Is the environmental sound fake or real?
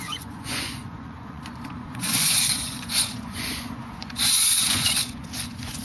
fake